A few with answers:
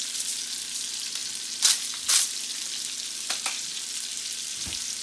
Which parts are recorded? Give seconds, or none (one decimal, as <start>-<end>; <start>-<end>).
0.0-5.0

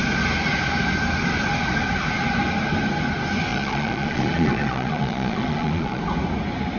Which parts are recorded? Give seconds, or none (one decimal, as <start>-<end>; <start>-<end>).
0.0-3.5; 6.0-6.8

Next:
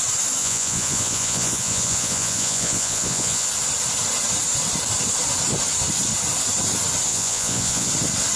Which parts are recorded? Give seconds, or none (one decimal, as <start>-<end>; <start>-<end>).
0.0-0.4; 3.5-7.1; 7.9-8.4

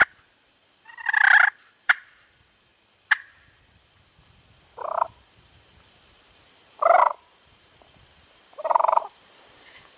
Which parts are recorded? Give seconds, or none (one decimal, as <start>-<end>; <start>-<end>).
0.0-1.8; 2.7-7.0